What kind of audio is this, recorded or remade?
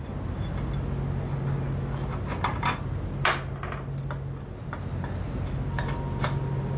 recorded